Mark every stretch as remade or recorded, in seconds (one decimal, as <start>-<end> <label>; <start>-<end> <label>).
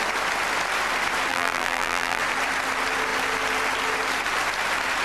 0.0-1.3 recorded; 1.3-2.2 remade; 2.2-5.0 recorded